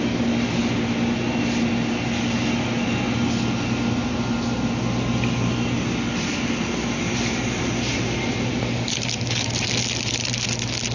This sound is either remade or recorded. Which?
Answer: recorded